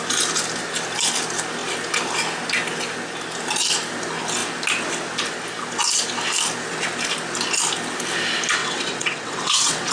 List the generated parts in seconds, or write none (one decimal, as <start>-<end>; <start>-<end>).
8.6-9.9